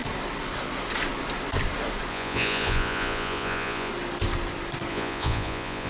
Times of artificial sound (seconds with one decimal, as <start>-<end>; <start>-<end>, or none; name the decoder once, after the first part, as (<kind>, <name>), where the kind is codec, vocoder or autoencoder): 2.1-3.9 (vocoder, Vocos); 4.9-5.9